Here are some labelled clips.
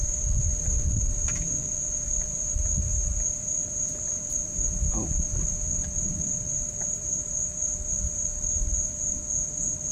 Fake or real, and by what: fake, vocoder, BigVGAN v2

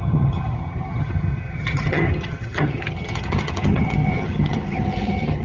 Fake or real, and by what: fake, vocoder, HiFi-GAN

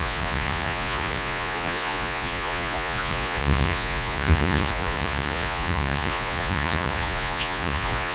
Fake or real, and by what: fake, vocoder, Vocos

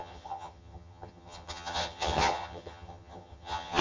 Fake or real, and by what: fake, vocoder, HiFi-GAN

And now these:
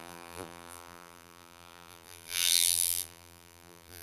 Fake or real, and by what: fake, vocoder, BigVGAN v2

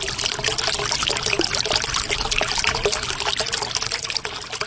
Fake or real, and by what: real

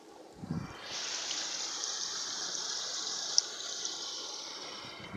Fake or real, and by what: fake, vocoder, BigVGAN v2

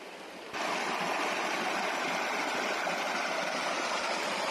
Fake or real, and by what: fake, vocoder, BigVGAN v2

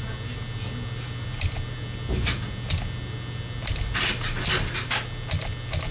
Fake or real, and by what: real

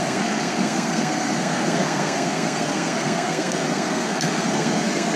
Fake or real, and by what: fake, codec, SNAC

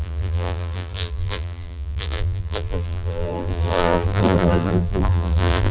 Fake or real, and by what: fake, vocoder, BigVGAN v2